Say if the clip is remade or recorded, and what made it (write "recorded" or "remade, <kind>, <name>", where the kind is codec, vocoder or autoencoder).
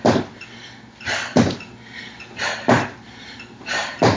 recorded